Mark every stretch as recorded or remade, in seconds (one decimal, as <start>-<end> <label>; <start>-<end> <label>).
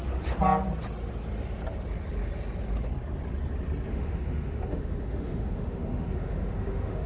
0.0-3.9 recorded; 3.9-7.1 remade